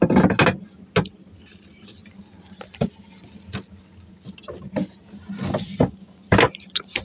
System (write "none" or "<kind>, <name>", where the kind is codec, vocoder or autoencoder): none